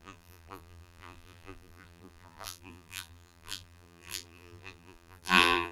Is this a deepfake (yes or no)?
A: yes